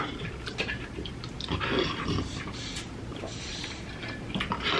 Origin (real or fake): real